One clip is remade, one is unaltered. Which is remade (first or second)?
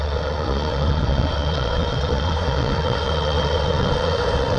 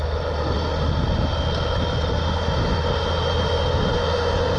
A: first